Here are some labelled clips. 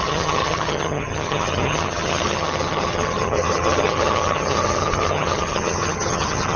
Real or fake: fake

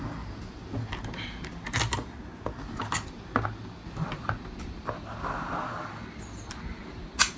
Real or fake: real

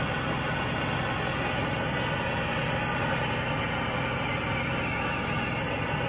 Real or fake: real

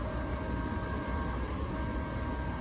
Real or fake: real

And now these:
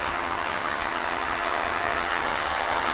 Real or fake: fake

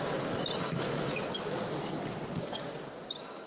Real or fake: real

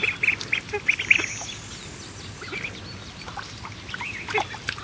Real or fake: real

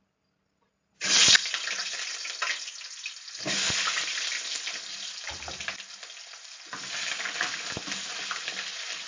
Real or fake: real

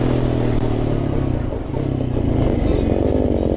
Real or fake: real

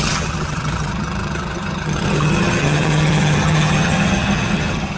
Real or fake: fake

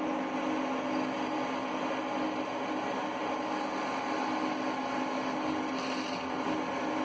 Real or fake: real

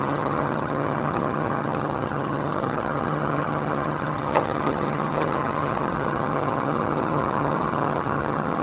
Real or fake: fake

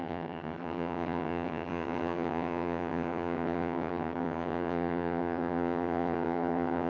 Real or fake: fake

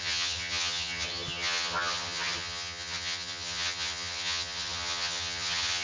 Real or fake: fake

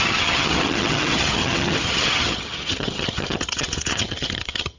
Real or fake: fake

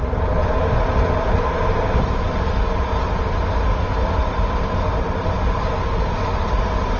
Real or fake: real